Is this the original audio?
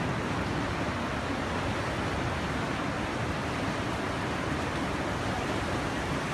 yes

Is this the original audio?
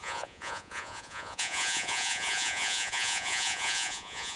no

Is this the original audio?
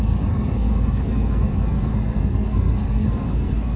no